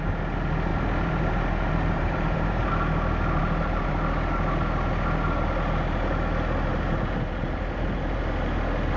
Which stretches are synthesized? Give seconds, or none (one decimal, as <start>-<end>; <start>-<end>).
0.7-2.7; 3.4-3.9; 6.7-8.2